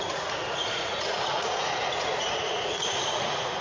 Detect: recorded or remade remade